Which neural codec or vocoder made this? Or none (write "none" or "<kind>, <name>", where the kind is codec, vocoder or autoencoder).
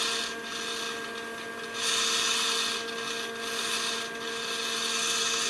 none